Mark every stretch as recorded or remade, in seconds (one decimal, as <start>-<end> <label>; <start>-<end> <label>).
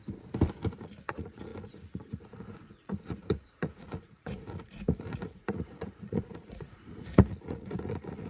0.0-0.8 recorded; 0.8-8.3 remade